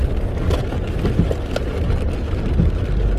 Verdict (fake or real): real